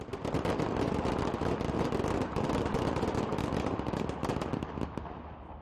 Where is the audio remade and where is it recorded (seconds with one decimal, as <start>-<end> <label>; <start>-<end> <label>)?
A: 0.0-5.6 recorded